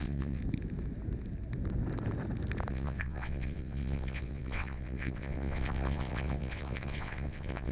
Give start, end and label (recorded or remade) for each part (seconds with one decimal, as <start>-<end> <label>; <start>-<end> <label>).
0.0-0.4 remade; 0.4-2.7 recorded; 2.7-7.7 remade